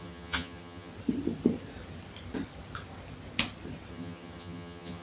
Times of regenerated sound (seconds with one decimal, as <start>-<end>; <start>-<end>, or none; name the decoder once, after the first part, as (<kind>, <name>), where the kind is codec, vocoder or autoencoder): 0.0-0.9 (vocoder, HiFi-GAN); 3.9-5.0